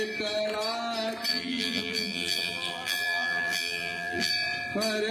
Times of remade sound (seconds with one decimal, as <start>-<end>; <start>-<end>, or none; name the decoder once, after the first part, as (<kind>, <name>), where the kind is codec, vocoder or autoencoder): 1.3-4.3 (vocoder, BigVGAN v2)